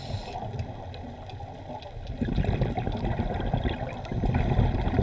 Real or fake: real